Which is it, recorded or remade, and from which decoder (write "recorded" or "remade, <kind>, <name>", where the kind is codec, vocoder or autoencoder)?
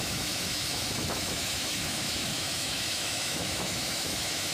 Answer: remade, autoencoder, DAC-VAE